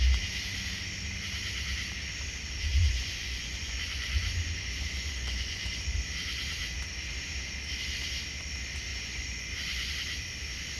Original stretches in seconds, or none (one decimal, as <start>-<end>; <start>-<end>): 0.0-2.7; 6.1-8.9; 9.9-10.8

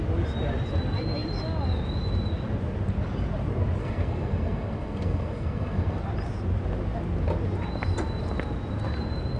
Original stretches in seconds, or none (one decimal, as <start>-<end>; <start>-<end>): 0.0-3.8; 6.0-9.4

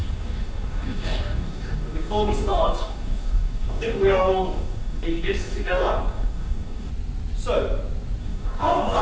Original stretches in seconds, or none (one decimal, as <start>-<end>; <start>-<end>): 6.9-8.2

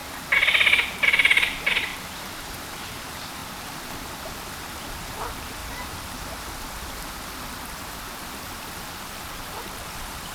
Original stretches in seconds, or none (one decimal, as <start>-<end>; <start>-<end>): 0.0-0.9; 1.9-2.5; 3.4-5.0; 5.6-9.0